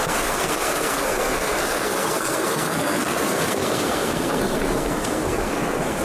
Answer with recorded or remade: remade